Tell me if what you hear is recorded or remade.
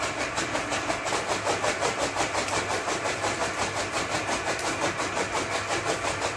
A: recorded